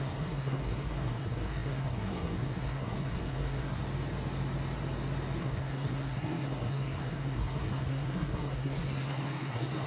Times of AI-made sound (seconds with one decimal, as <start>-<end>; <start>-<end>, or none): 0.0-3.8; 5.4-9.9